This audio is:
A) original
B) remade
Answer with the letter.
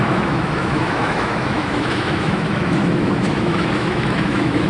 B